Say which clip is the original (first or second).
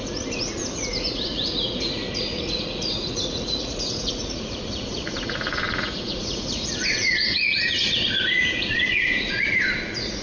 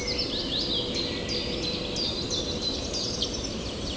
second